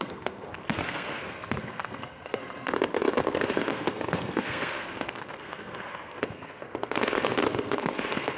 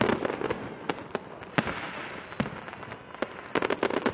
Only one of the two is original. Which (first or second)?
second